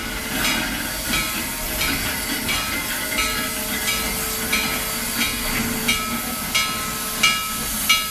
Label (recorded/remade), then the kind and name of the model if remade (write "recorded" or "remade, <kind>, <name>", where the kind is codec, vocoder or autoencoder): recorded